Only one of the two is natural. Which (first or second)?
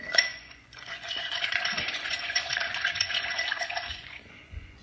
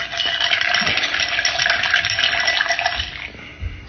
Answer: second